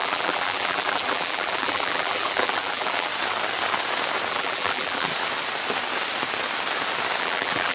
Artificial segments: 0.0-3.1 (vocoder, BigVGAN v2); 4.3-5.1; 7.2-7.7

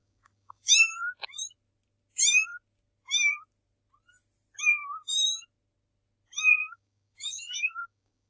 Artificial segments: 0.0-0.7 (codec, DAC); 6.6-8.3

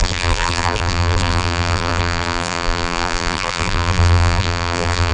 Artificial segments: 0.0-5.1 (vocoder, BigVGAN v2)

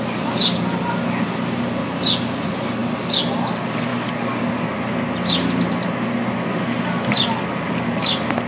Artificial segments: none